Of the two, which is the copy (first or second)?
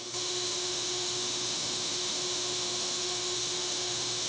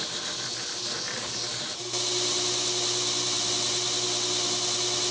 first